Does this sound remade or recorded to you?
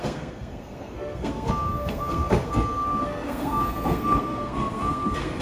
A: remade